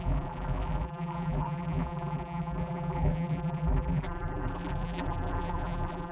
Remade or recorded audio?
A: remade